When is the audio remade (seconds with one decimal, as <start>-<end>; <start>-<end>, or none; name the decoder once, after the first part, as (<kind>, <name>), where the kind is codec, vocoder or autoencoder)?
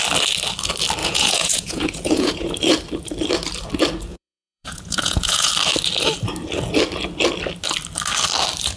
1.0-2.5 (vocoder, Vocos); 4.1-5.5